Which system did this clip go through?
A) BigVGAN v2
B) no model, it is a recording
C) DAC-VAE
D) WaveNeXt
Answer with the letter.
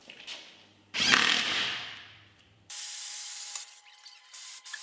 A